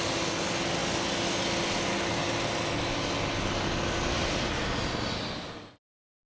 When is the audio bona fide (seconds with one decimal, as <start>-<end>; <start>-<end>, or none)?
0.0-6.3